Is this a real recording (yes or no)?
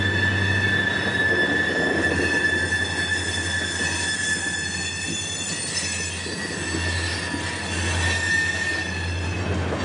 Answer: yes